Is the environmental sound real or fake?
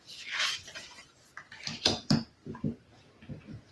real